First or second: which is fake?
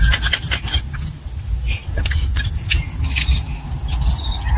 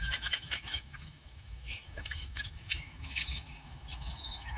second